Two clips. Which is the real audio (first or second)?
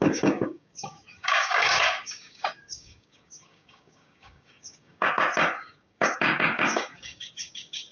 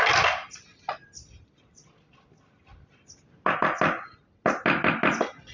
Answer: second